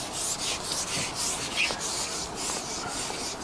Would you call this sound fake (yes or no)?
no